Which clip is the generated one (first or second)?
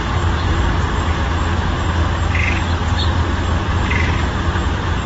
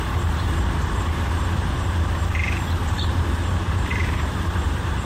second